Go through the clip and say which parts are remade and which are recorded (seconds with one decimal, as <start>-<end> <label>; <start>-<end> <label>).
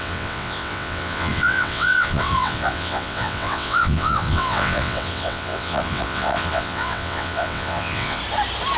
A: 0.0-8.2 remade; 8.2-8.8 recorded